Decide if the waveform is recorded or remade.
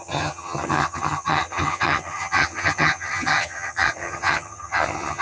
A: remade